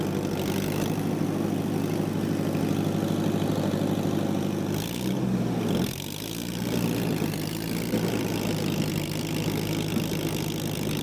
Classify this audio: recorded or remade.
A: recorded